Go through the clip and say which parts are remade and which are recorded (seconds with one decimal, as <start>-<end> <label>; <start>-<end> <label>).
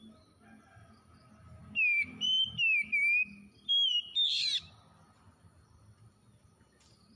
0.0-7.2 recorded